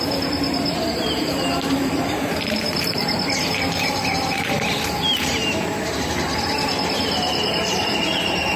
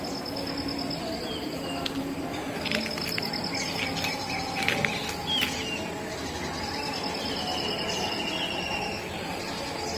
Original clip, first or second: second